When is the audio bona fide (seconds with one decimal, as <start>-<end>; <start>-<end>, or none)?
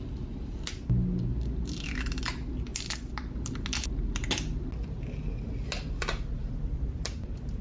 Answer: 0.0-7.6